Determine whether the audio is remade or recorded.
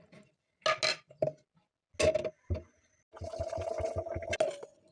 recorded